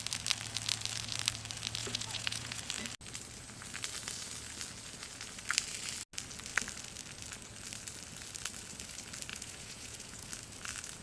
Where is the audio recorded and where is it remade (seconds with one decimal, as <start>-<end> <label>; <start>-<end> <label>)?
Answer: 0.0-1.8 recorded; 1.8-2.6 remade; 2.6-9.3 recorded; 9.3-10.3 remade; 10.3-11.0 recorded